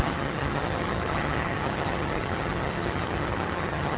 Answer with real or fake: fake